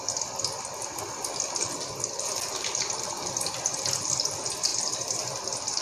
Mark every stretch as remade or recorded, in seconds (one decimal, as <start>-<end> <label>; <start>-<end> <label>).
0.0-4.7 recorded; 4.7-5.2 remade; 5.2-5.8 recorded